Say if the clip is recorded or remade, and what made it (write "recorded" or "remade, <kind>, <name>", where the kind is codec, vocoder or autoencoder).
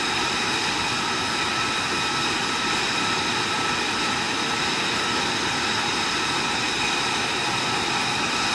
recorded